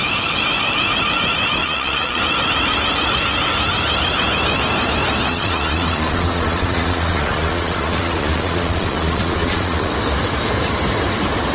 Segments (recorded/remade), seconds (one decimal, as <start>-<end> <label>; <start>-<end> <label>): 0.0-1.6 recorded; 1.6-2.2 remade; 2.2-5.3 recorded; 5.3-9.9 remade; 9.9-11.5 recorded